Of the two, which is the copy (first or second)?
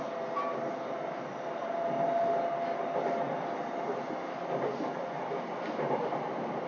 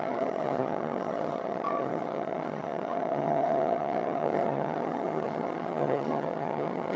second